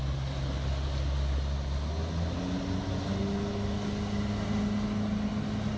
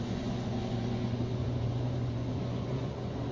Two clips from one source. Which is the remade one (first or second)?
second